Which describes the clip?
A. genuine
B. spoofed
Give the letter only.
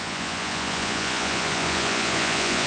B